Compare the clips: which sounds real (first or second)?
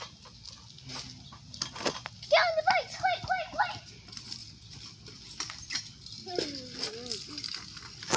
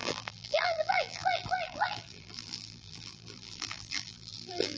first